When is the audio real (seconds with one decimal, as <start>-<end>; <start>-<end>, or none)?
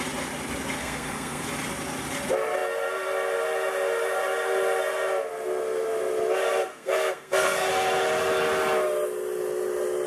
0.0-0.8; 1.5-6.7; 7.7-10.1